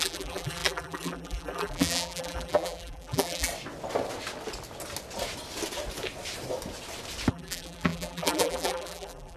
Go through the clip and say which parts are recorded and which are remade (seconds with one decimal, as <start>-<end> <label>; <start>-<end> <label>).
0.0-3.5 remade; 3.5-7.3 recorded; 7.3-9.4 remade